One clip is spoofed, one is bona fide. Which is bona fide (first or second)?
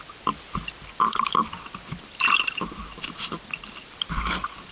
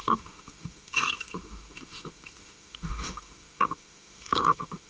first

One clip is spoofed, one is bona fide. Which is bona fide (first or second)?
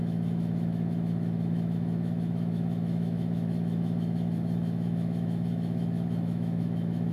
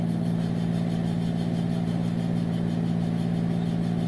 second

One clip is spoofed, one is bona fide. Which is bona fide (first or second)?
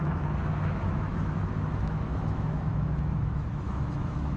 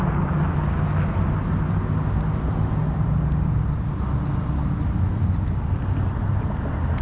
second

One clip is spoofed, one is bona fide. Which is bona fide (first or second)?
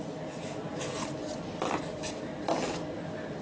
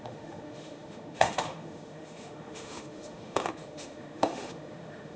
first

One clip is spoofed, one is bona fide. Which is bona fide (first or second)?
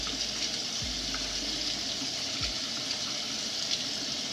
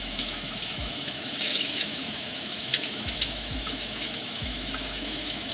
first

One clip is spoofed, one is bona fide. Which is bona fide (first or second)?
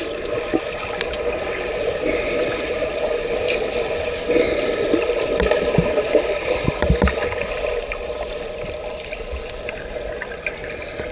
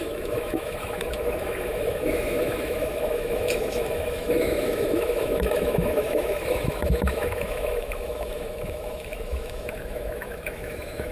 first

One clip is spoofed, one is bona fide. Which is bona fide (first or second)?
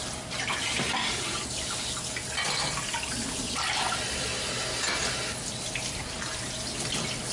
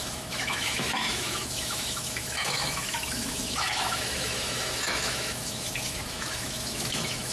first